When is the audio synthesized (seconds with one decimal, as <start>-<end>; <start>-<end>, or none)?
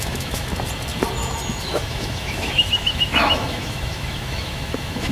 0.0-0.5; 1.6-5.1